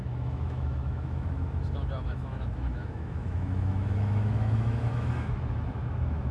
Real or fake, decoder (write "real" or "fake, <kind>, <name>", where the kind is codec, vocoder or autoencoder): fake, autoencoder, DAC-VAE